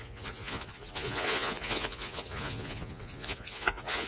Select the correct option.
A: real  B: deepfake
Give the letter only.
B